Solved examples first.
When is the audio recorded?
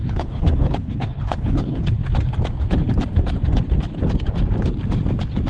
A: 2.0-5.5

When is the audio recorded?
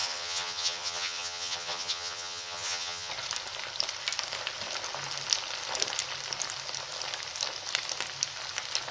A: 3.1-8.9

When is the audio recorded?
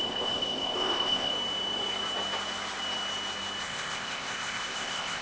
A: 1.3-3.6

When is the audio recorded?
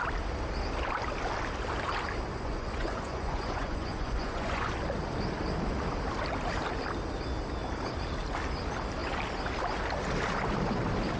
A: 0.0-2.3; 4.7-11.2